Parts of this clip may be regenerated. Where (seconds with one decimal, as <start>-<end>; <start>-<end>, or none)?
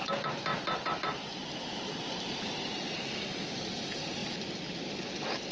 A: none